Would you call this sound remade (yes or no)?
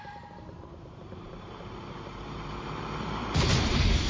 yes